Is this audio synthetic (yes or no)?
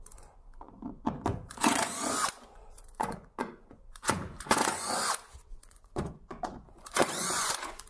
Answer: yes